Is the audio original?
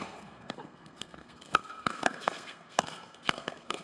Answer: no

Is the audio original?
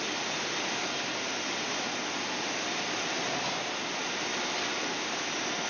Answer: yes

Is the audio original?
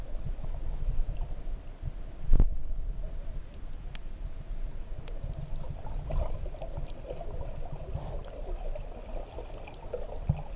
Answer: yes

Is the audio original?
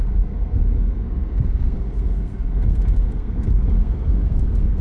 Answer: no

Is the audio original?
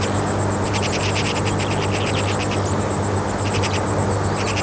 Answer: yes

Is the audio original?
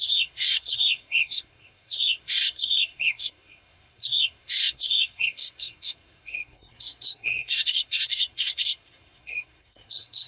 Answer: no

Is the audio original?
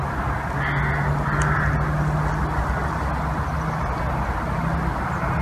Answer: yes